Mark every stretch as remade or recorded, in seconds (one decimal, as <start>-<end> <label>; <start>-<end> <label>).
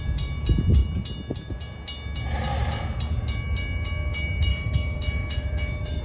0.0-4.5 recorded; 4.5-6.0 remade